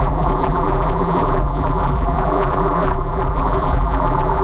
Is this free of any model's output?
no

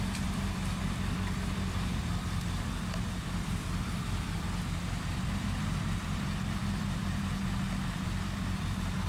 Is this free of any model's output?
no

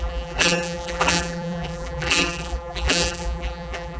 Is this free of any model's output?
no